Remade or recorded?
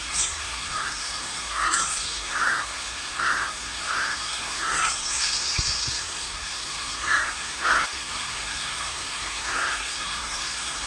remade